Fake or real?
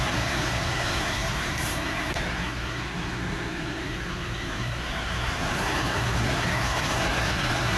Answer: fake